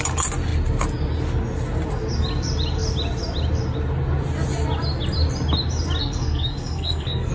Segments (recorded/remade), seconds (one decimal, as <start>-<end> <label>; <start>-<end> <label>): 0.0-6.0 recorded; 6.0-7.3 remade